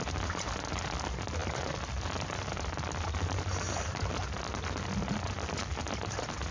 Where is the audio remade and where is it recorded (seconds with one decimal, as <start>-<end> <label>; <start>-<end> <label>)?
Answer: 0.0-6.5 recorded